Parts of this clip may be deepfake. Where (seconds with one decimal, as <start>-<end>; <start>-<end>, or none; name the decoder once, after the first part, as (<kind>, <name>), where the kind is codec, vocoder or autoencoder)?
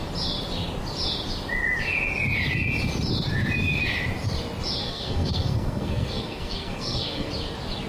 4.8-7.3 (codec, SNAC)